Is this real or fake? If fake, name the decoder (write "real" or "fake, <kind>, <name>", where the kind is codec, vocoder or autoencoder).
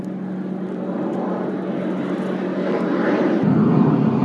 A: real